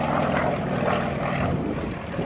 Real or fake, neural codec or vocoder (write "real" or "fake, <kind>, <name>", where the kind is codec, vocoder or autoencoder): real